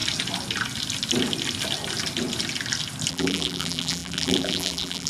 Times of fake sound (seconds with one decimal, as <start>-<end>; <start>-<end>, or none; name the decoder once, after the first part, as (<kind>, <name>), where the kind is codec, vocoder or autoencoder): 3.1-5.1 (vocoder, BigVGAN v2)